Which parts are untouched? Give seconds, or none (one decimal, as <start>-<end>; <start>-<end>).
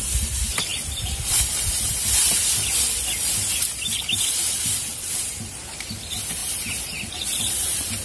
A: 0.0-0.7; 2.7-4.4; 5.6-6.4; 7.1-8.0